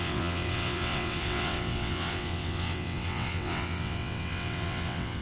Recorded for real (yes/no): no